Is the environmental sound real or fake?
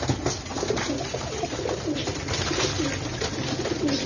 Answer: real